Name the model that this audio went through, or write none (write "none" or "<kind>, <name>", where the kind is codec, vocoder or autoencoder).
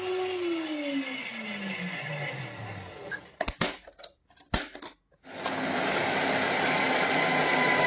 none